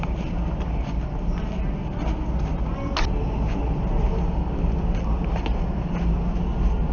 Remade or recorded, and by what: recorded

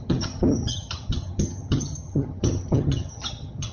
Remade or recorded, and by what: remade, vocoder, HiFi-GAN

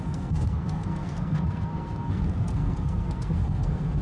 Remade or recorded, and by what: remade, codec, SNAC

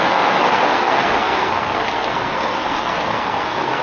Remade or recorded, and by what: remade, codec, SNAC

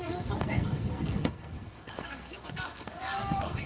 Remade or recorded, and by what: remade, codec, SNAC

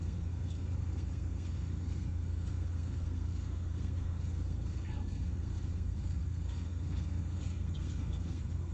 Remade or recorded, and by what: remade, codec, SNAC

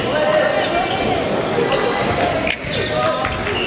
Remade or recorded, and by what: recorded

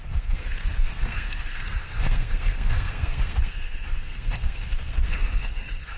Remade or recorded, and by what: remade, codec, SNAC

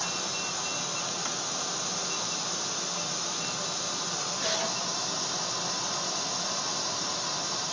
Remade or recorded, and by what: recorded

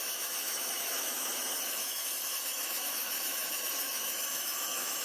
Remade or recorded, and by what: remade, autoencoder, DAC-VAE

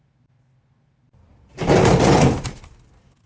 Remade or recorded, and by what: recorded